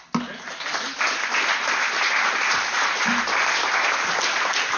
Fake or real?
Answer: real